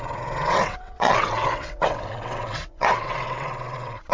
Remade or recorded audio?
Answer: remade